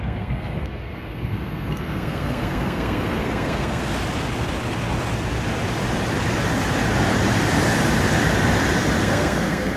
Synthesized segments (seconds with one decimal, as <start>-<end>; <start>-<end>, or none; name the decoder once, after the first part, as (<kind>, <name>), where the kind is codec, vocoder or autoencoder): 0.0-3.9 (codec, SNAC); 9.0-9.8